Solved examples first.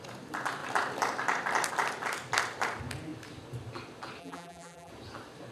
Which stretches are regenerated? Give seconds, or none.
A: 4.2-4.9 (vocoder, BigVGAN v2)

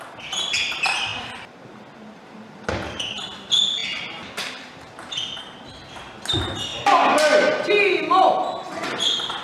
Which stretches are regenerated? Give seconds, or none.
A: 3.8-5.4 (vocoder, BigVGAN v2)

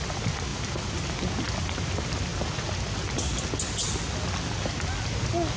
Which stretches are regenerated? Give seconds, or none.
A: none

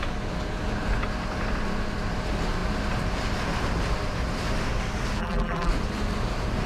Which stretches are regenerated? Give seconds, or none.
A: 5.2-5.7 (vocoder, BigVGAN v2)

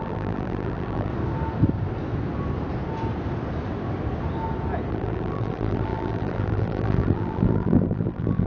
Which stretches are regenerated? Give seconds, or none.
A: 0.0-1.1 (vocoder, BigVGAN v2); 4.9-8.5

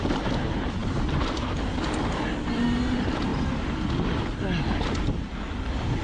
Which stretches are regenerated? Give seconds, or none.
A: none